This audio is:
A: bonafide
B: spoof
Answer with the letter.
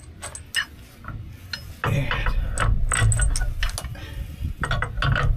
A